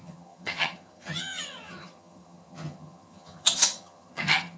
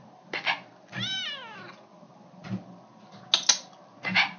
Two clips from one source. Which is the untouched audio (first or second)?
second